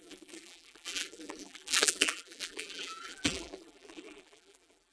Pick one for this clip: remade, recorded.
remade